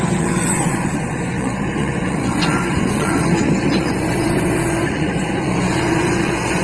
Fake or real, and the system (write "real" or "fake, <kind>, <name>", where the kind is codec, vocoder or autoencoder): fake, vocoder, Vocos